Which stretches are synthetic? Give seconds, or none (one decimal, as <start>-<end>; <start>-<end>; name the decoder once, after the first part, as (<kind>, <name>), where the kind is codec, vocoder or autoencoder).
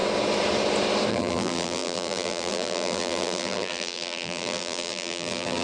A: 1.1-5.6 (vocoder, BigVGAN v2)